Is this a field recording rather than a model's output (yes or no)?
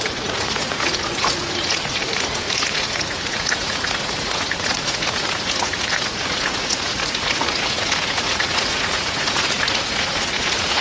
no